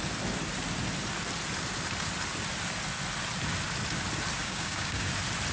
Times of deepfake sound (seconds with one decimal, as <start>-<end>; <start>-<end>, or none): 4.4-5.1